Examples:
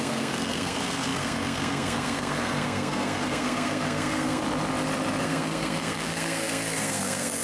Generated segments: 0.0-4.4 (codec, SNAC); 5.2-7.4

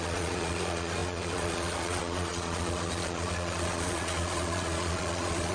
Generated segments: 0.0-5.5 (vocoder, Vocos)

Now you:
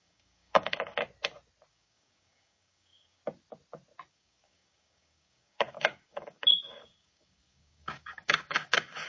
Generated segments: 0.0-1.0 (codec, DAC); 1.7-3.2; 4.1-9.1